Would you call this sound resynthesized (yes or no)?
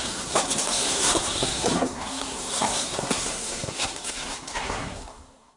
yes